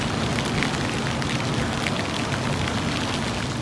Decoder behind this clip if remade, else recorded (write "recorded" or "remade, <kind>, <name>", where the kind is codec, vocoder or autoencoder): recorded